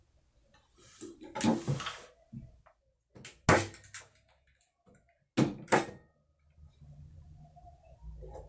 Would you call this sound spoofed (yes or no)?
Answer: no